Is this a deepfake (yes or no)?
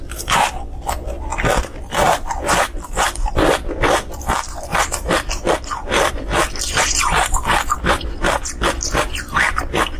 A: yes